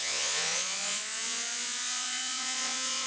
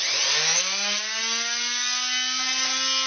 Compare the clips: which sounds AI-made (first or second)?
first